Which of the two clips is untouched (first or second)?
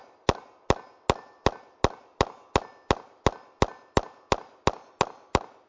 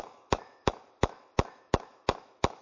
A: first